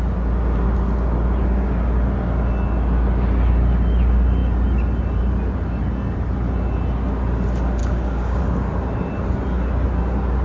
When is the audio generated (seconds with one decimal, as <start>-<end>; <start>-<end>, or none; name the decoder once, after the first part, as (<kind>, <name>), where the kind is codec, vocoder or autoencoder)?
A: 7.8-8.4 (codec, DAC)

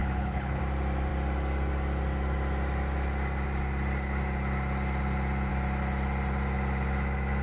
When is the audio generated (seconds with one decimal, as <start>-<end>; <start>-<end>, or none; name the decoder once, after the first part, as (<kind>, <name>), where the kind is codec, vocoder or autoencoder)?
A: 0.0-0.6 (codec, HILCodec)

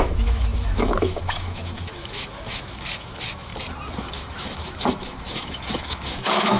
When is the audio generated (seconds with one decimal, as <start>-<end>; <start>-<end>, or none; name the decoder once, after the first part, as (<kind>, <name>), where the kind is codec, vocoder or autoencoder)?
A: 0.0-3.5 (autoencoder, DAC-VAE); 4.1-6.6

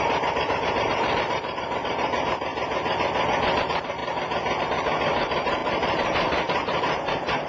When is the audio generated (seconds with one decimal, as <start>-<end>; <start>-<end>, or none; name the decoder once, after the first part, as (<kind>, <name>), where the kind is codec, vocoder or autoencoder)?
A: 0.0-2.5 (vocoder, BigVGAN v2); 3.6-4.0; 4.6-7.5